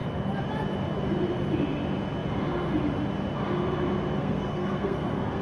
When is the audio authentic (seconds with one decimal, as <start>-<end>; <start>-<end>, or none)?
0.0-4.2